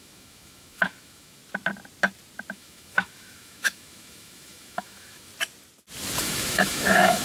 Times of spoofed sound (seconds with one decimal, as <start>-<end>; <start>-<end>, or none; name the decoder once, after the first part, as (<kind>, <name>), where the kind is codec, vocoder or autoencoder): 0.0-1.4 (autoencoder, DAC-VAE); 2.5-5.3; 6.2-7.2